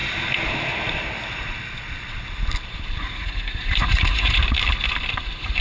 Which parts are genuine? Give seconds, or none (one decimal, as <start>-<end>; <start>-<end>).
0.0-3.0; 4.4-5.1